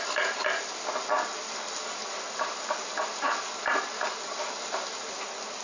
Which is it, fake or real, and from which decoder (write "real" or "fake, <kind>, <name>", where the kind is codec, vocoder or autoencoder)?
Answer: real